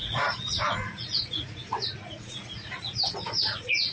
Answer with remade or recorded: remade